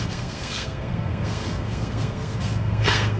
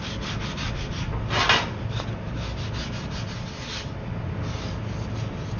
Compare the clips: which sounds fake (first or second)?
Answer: first